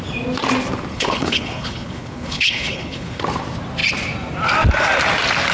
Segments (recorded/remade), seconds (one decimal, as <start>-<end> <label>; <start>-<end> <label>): 0.0-0.9 recorded; 0.9-3.2 remade; 3.2-5.5 recorded